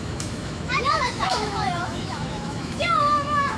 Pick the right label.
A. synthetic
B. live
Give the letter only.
A